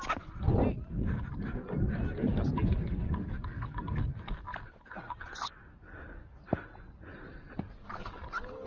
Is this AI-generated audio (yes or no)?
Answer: no